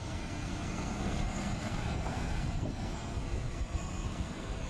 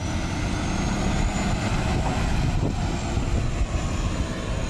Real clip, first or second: second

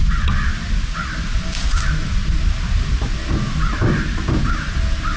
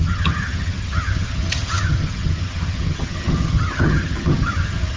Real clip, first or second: first